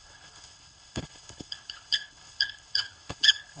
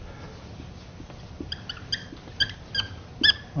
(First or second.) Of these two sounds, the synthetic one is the first